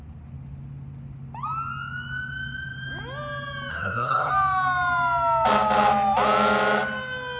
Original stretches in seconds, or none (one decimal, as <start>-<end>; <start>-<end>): 0.0-3.7; 4.3-7.4